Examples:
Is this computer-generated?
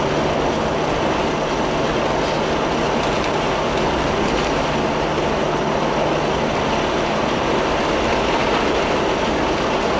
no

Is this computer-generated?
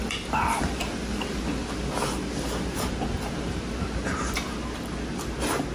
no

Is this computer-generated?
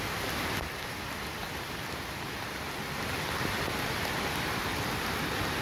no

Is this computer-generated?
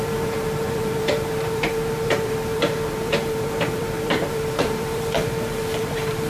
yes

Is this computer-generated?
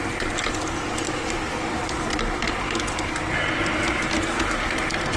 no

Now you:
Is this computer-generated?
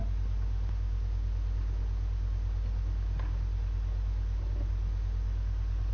no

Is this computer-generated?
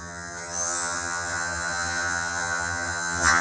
yes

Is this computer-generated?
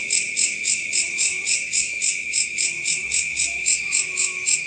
yes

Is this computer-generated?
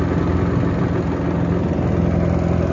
no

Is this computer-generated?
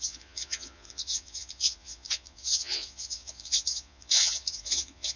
yes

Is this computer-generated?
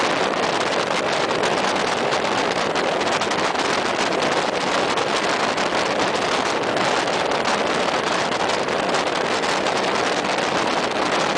no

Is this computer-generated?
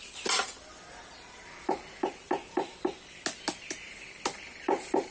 no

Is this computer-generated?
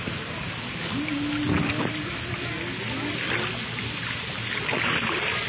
no